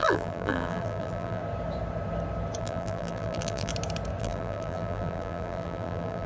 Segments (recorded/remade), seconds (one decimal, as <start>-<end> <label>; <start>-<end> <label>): 0.0-1.4 remade; 1.4-2.6 recorded; 2.6-3.7 remade; 3.7-4.2 recorded; 4.2-6.3 remade